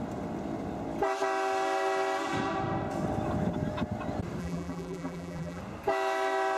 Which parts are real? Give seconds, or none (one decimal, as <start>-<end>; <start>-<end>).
0.0-4.4; 5.6-6.6